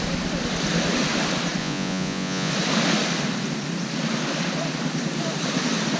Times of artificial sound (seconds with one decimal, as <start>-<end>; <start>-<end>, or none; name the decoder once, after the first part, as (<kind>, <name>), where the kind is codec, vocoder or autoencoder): 1.6-2.5 (vocoder, Vocos)